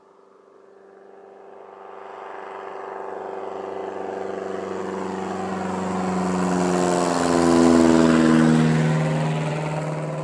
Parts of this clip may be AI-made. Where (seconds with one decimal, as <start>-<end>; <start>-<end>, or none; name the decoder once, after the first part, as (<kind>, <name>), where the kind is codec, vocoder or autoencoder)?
none